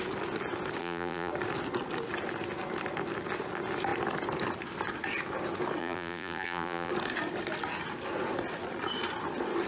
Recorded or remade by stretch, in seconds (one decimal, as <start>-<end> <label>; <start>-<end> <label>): 0.0-0.8 recorded; 0.8-1.3 remade; 1.3-5.8 recorded; 5.8-6.9 remade; 6.9-9.7 recorded